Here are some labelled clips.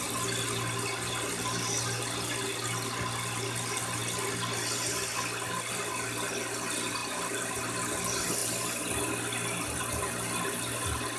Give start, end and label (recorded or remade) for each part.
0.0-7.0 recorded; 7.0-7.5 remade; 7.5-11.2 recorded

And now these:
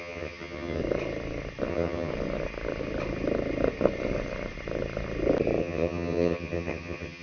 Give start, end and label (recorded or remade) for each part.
0.0-0.8 remade; 0.8-1.7 recorded; 1.7-2.1 remade; 2.1-5.6 recorded; 5.6-7.2 remade